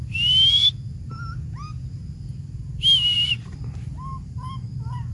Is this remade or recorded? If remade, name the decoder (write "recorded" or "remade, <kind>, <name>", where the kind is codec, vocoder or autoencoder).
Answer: recorded